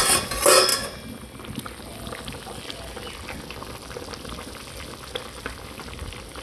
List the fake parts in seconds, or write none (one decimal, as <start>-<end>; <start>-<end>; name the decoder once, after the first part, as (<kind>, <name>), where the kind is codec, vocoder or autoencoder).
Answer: none